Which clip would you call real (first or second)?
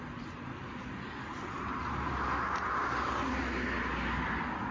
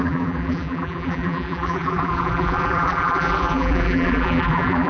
first